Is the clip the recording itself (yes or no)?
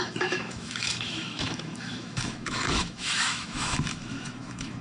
no